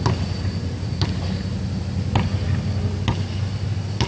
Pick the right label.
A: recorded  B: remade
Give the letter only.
A